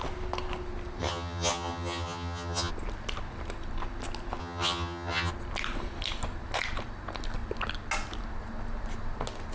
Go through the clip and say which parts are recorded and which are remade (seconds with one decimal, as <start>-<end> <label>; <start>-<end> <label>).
0.0-1.0 recorded; 1.0-2.7 remade; 2.7-4.4 recorded; 4.4-5.3 remade; 5.3-9.5 recorded